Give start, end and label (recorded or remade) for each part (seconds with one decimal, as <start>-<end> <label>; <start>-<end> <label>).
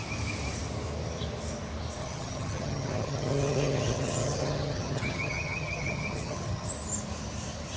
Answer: 0.0-2.0 recorded; 2.0-6.7 remade; 6.7-7.8 recorded